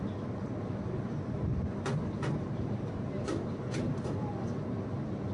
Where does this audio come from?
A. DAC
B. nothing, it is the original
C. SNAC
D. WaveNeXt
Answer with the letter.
B